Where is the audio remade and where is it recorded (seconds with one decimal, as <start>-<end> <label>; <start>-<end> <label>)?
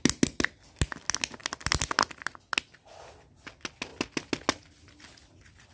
0.0-5.7 recorded